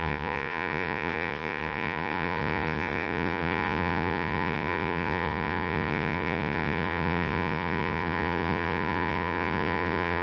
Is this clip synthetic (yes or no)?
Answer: yes